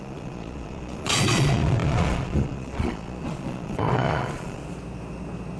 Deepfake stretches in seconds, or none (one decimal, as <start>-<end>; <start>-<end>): 0.0-4.6